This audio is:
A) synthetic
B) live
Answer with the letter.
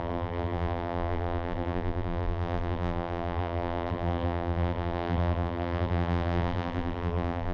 A